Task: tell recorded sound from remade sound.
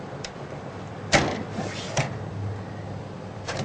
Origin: remade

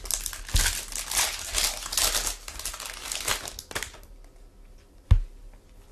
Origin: recorded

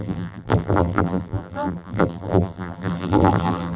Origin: remade